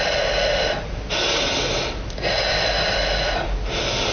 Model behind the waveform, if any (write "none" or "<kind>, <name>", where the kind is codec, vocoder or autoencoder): none